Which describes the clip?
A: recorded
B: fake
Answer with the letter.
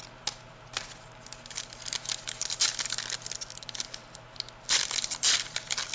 A